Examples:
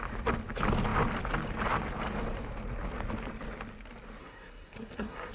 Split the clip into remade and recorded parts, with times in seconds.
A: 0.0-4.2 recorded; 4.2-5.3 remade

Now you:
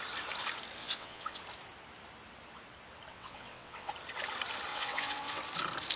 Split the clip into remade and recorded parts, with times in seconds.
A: 0.0-0.8 recorded; 0.8-1.4 remade; 1.4-3.1 recorded; 3.1-3.9 remade; 3.9-4.7 recorded; 4.7-5.4 remade; 5.4-6.0 recorded

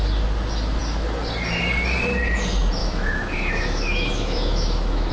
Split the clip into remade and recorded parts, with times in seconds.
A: 0.0-2.8 recorded; 2.8-5.1 remade

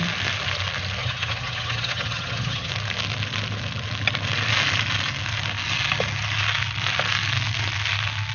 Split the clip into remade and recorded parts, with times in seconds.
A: 0.0-1.0 recorded; 1.0-2.7 remade; 2.7-8.3 recorded